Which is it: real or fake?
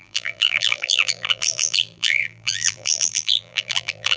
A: fake